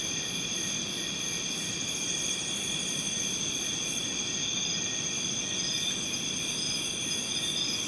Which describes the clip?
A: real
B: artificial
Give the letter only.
A